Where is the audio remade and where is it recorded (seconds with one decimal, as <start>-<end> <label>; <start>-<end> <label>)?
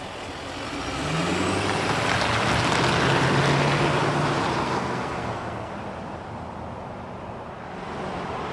0.0-4.6 recorded; 4.6-5.7 remade; 5.7-8.5 recorded